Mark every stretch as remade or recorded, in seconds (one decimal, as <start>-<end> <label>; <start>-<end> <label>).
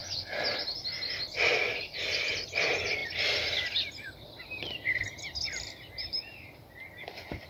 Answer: 0.0-7.5 remade